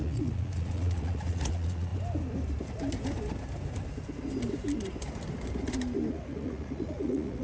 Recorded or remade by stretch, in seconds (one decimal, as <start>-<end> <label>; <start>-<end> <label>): 0.0-1.9 remade; 1.9-6.1 recorded; 6.1-7.4 remade